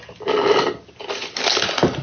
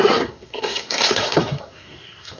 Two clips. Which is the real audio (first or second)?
first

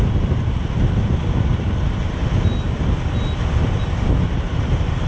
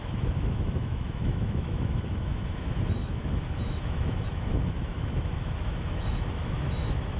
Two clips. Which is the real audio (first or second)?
first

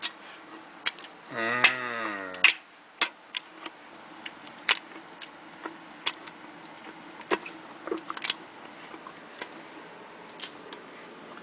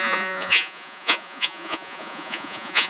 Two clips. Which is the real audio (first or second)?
first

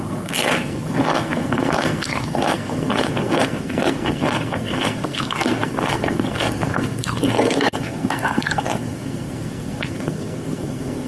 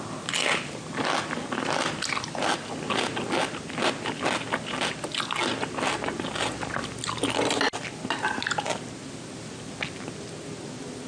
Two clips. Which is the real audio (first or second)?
second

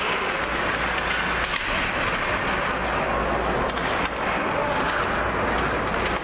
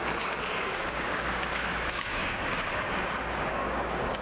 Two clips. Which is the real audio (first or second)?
first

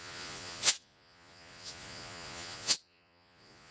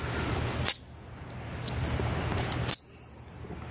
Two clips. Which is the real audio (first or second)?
second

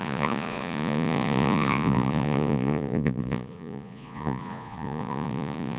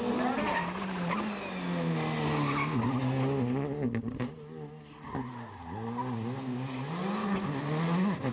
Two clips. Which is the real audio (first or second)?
second